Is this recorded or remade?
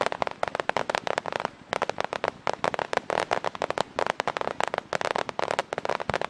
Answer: recorded